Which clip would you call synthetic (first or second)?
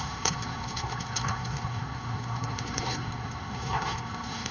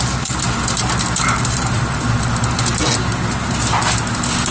first